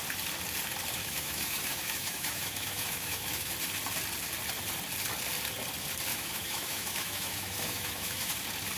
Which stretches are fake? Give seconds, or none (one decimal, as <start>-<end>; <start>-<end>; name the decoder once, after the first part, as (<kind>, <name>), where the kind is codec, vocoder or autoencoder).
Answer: 1.0-3.5 (autoencoder, DAC-VAE); 6.1-8.3